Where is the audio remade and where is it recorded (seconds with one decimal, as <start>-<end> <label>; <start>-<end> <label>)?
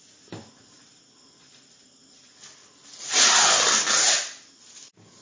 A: 0.0-5.2 recorded